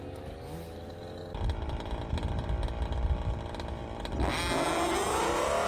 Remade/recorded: recorded